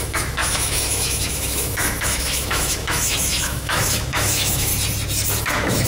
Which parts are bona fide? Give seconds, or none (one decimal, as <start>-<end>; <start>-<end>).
4.7-5.4